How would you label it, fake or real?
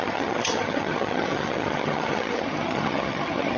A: fake